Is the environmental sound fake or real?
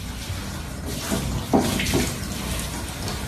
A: real